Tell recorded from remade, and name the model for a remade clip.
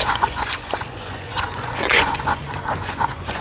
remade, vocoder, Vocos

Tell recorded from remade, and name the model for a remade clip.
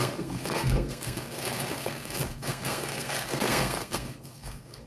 remade, codec, SNAC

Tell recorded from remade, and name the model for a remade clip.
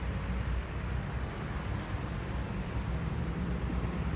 remade, vocoder, BigVGAN v2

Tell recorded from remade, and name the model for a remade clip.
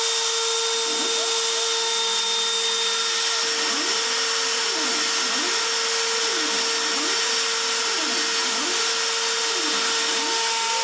recorded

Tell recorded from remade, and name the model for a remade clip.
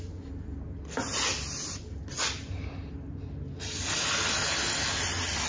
recorded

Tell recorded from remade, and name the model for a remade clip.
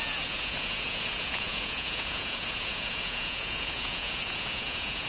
remade, vocoder, Vocos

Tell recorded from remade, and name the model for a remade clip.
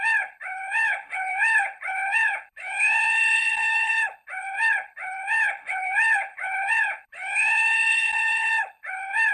remade, codec, HILCodec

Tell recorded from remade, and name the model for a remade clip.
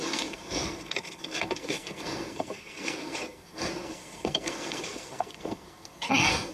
remade, codec, SNAC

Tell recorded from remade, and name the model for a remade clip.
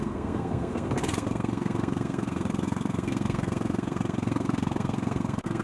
remade, codec, SNAC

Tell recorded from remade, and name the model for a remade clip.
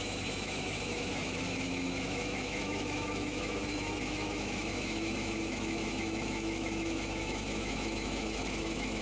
remade, autoencoder, DAC-VAE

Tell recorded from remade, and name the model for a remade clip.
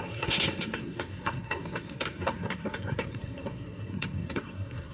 remade, codec, SNAC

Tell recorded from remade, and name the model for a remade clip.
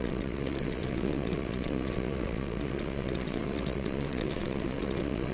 remade, vocoder, WaveNeXt